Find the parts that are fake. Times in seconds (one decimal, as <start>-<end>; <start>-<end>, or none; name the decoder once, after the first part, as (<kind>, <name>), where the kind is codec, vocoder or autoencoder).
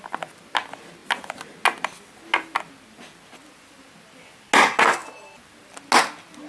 none